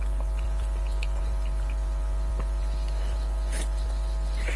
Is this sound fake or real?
real